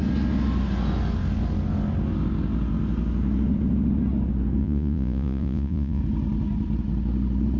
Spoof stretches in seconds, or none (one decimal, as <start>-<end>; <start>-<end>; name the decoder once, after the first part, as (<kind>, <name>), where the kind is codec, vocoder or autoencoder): 4.6-6.0 (vocoder, Vocos)